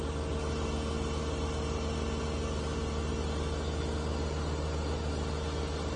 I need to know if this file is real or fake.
real